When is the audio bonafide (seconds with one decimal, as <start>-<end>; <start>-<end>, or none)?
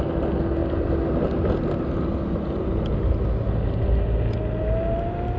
0.0-5.4